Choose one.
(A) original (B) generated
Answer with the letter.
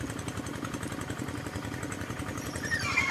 A